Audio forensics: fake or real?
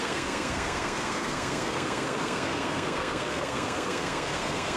fake